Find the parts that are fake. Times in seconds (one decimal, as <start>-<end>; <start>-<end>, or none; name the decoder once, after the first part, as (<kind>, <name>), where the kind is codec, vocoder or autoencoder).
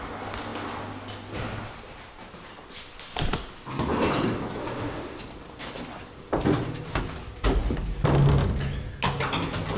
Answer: 4.6-5.2 (autoencoder, DAC-VAE)